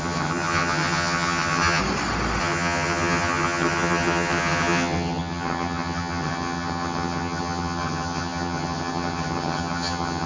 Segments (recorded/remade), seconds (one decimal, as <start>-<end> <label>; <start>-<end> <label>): 0.0-1.8 remade; 1.8-2.4 recorded; 2.4-10.3 remade